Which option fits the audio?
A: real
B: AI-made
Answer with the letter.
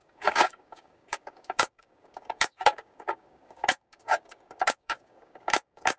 B